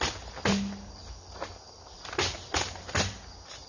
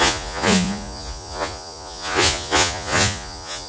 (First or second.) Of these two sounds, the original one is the first